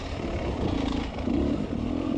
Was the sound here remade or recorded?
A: remade